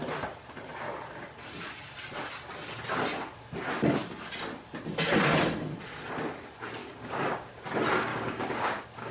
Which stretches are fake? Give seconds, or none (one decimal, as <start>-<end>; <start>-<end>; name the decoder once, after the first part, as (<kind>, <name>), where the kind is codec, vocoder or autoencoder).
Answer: 6.8-7.5 (codec, DAC); 8.1-9.1